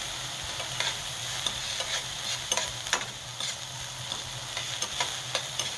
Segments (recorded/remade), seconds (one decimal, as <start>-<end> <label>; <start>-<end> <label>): 0.0-5.8 recorded